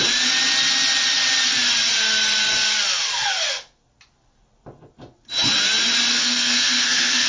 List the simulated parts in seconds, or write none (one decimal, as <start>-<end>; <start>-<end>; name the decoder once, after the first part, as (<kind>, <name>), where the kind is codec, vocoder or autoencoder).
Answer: 6.1-7.3 (codec, SNAC)